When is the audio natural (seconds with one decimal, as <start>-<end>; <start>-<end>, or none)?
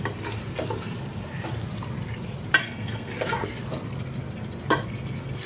0.0-2.6; 3.1-5.5